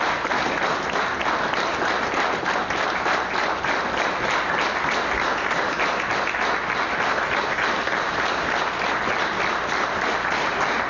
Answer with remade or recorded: recorded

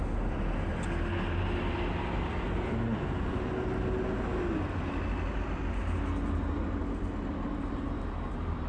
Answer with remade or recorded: recorded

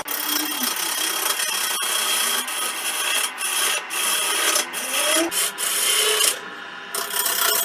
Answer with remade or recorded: recorded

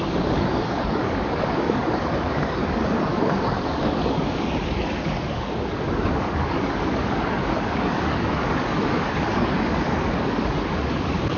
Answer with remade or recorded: remade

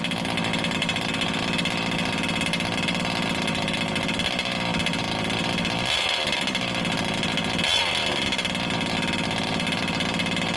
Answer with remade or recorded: recorded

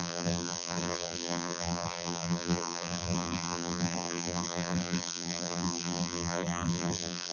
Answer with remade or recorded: remade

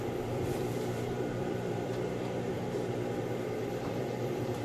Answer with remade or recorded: remade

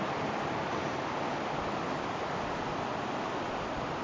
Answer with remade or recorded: recorded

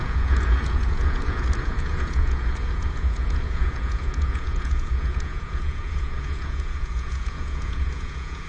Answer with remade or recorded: remade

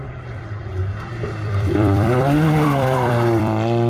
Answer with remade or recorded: remade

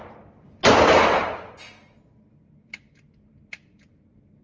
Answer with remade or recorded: recorded